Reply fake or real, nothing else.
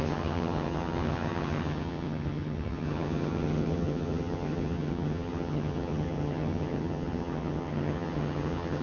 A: fake